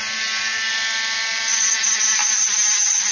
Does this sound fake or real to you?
real